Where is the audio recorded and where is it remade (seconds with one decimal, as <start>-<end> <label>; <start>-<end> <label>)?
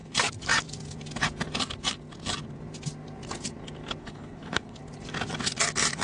0.0-4.0 recorded; 4.0-4.8 remade; 4.8-6.0 recorded